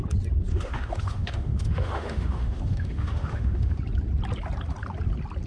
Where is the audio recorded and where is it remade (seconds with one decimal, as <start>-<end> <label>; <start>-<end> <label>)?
0.0-0.5 recorded; 0.5-3.8 remade; 3.8-5.5 recorded